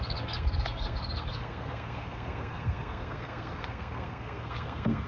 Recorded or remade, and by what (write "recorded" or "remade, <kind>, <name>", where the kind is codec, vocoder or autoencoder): remade, codec, SNAC